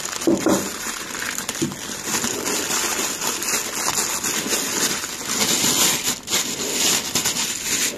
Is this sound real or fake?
real